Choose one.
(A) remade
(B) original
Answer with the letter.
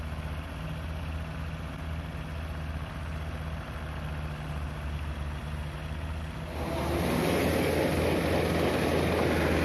B